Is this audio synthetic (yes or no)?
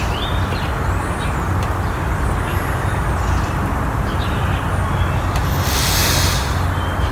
no